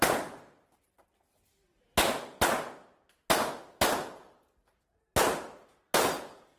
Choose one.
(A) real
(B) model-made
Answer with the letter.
A